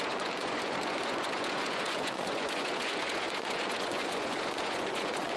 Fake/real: fake